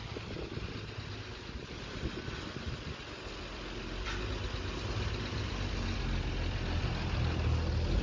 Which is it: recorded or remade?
recorded